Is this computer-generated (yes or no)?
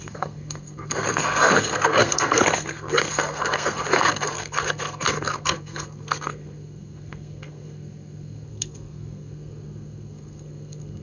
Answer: yes